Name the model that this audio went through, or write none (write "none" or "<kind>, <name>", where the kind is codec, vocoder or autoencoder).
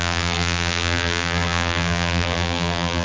vocoder, BigVGAN v2